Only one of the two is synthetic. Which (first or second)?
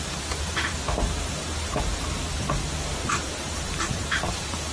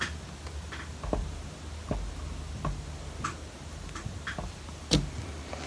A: first